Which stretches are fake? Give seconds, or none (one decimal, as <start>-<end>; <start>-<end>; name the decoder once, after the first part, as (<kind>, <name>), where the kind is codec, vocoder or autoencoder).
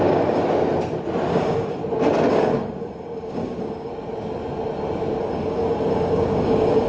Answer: 0.0-0.4 (codec, DAC); 1.3-1.8; 2.3-3.9; 5.2-6.9